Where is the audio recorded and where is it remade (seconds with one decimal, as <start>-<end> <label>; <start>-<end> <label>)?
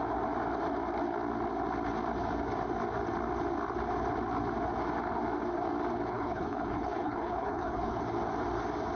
0.0-6.1 recorded; 6.1-8.0 remade; 8.0-9.0 recorded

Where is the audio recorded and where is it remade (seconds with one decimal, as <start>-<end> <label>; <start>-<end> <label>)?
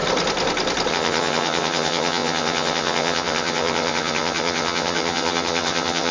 0.0-0.9 recorded; 0.9-6.1 remade